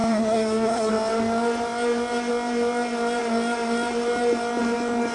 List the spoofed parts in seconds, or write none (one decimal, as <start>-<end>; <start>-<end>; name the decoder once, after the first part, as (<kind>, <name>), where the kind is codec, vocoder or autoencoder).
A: 0.0-0.9 (codec, SNAC)